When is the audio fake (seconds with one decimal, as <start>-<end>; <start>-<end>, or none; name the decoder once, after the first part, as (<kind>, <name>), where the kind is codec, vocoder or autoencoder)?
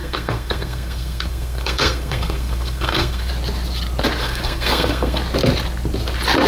0.0-3.3 (codec, SNAC); 4.2-5.2